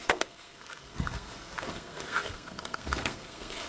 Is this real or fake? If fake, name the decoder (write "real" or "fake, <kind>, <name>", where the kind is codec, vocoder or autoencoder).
fake, codec, SNAC